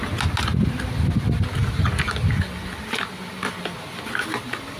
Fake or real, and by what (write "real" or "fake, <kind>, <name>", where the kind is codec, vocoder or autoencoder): real